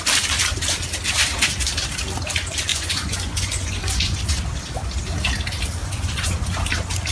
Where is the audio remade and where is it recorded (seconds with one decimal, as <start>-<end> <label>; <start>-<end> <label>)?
0.0-2.7 recorded; 2.7-4.2 remade; 4.2-5.8 recorded; 5.8-6.3 remade; 6.3-7.1 recorded